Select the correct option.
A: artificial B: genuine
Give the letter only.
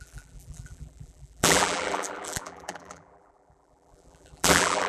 A